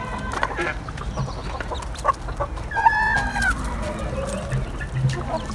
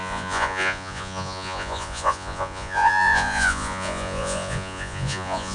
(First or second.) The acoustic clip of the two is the first